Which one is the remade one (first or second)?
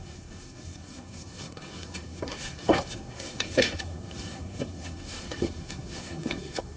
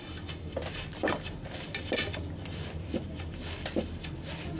first